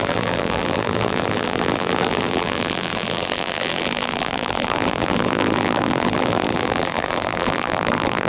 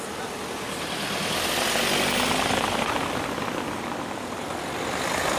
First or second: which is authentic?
second